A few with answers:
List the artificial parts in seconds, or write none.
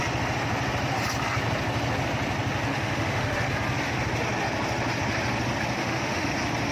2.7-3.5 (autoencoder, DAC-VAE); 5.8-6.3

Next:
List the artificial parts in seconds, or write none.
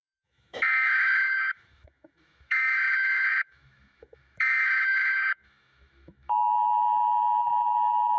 0.0-8.2 (autoencoder, DAC-VAE)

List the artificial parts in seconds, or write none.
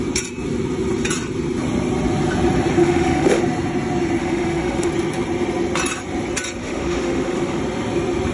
2.8-3.4 (autoencoder, DAC-VAE); 4.2-4.9; 6.6-7.6